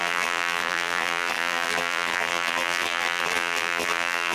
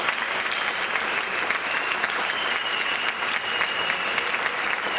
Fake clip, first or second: first